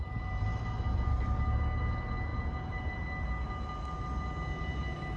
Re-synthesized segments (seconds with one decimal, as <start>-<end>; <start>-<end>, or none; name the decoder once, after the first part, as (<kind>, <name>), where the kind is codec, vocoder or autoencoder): 1.1-1.8 (codec, DAC)